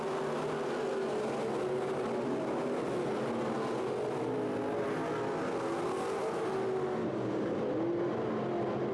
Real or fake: real